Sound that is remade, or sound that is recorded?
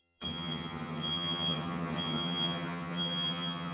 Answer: remade